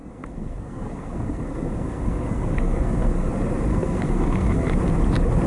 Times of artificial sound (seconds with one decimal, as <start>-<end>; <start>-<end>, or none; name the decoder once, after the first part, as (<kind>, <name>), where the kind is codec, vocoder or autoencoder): 0.0-3.3 (codec, SNAC); 3.7-4.7